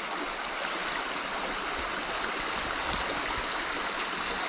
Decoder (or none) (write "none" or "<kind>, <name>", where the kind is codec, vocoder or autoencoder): none